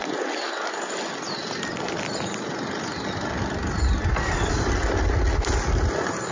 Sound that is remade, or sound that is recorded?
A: recorded